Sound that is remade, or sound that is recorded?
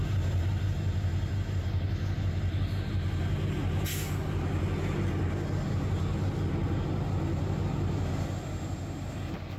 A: recorded